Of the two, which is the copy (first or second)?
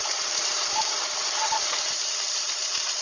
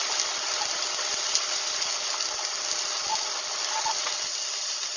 first